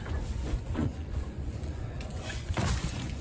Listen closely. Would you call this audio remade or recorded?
remade